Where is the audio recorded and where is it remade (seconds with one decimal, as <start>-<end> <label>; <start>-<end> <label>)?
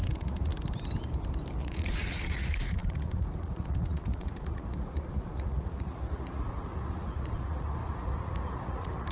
0.0-0.5 remade; 0.5-1.6 recorded; 1.6-9.1 remade